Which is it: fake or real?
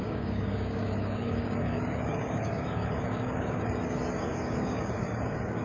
fake